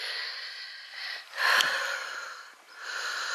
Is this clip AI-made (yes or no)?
no